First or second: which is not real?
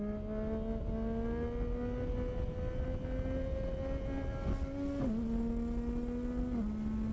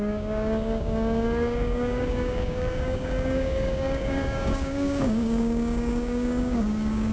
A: second